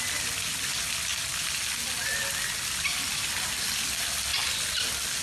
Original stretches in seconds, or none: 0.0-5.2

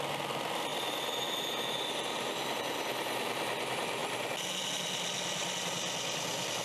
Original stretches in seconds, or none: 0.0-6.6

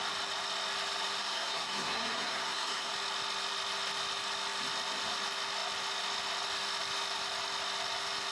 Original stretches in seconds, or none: 0.0-1.2; 2.9-8.3

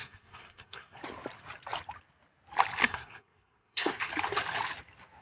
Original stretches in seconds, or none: 1.0-2.8; 4.1-5.2

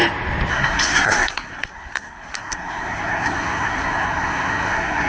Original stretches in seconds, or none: 0.0-0.5